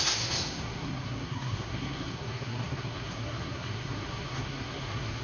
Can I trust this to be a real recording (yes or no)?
no